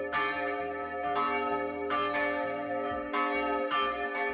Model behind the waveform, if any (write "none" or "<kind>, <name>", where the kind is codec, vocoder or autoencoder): none